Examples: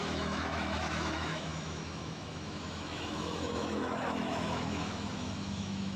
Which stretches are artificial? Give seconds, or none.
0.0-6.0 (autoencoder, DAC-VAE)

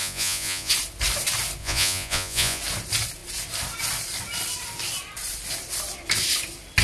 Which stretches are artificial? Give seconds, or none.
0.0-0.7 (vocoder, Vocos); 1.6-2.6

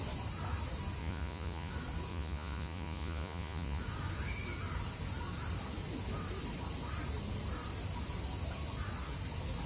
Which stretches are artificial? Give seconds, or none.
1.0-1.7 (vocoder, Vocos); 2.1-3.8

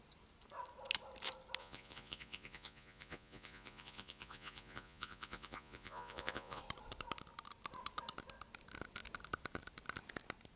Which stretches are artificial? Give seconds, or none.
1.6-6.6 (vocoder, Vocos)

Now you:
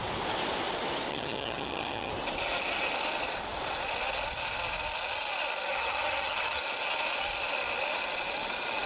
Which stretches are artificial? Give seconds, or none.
1.1-2.1 (vocoder, HiFi-GAN); 5.7-6.6

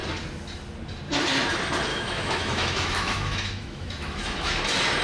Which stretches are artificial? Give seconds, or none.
1.9-4.5 (autoencoder, DAC-VAE)